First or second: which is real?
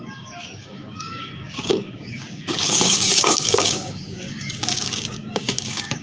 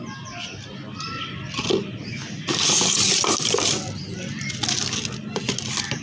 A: second